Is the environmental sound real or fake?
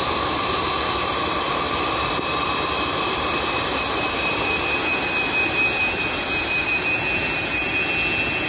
fake